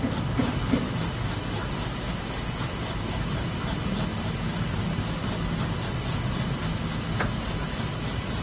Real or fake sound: real